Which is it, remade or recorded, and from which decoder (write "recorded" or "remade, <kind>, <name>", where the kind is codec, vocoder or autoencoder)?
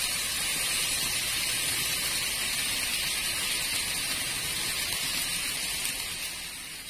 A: recorded